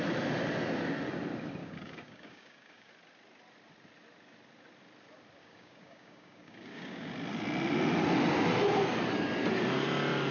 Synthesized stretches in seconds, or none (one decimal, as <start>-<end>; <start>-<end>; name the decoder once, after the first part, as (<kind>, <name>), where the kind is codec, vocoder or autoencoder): 1.6-2.9 (codec, DAC); 5.4-7.1